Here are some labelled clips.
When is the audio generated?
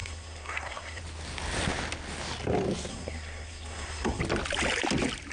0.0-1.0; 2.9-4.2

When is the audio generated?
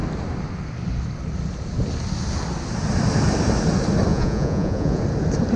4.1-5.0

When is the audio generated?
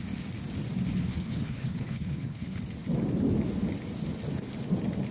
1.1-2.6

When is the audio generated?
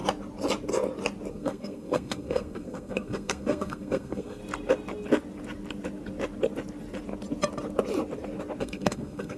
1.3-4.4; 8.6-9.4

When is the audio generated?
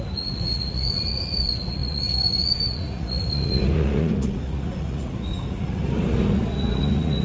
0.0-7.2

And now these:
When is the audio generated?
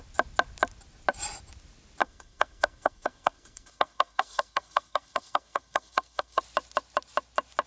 2.0-6.4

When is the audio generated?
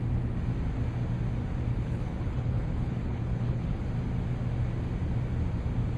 1.7-3.8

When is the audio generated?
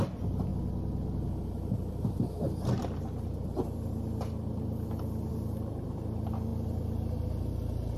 none